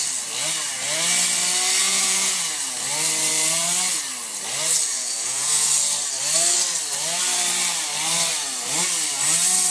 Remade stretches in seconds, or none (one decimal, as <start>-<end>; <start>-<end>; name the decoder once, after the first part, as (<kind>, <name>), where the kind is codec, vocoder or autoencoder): 1.8-2.4 (vocoder, Vocos); 4.9-5.7